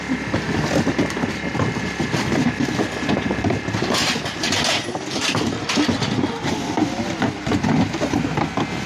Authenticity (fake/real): real